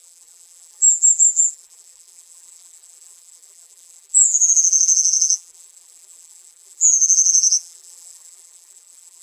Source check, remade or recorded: remade